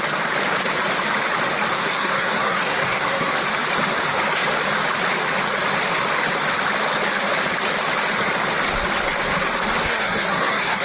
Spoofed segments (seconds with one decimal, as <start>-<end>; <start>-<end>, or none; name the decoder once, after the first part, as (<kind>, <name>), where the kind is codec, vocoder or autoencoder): 1.7-3.3 (codec, SNAC); 9.8-10.8